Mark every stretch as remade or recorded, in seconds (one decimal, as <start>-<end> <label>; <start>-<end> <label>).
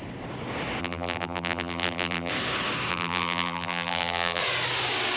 0.0-0.8 recorded; 0.8-2.3 remade; 2.3-2.9 recorded; 2.9-4.4 remade; 4.4-5.2 recorded